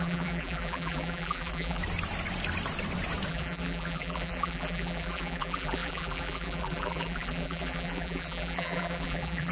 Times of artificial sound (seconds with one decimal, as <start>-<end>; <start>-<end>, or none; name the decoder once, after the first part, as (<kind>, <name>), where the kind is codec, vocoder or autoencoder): 0.0-1.8 (vocoder, BigVGAN v2); 3.3-9.5